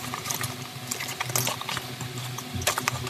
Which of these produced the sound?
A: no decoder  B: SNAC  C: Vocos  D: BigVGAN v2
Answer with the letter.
A